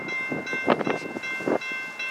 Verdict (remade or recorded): recorded